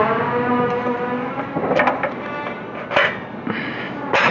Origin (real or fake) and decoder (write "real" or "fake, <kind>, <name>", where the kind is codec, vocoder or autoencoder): real